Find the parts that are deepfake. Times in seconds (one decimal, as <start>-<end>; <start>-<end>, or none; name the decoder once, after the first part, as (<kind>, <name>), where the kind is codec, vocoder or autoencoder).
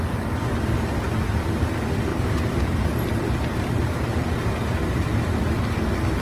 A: 2.1-5.4 (vocoder, BigVGAN v2)